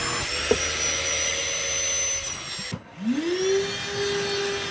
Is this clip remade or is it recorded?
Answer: recorded